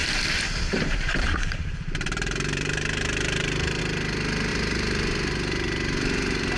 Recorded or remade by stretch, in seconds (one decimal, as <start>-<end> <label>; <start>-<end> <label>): 0.0-3.8 remade; 3.8-4.5 recorded; 4.5-6.6 remade